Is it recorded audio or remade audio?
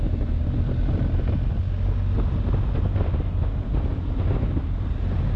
recorded